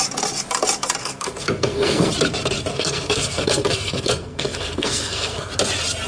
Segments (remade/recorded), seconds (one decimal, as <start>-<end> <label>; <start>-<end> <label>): 0.0-1.0 recorded; 1.0-2.1 remade; 2.1-2.7 recorded; 2.7-5.5 remade; 5.5-6.1 recorded